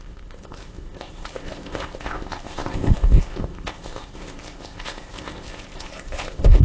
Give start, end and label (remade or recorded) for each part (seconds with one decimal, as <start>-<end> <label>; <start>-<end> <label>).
0.0-6.6 remade